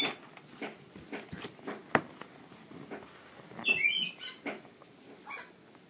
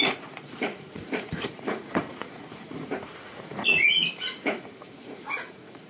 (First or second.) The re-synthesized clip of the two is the second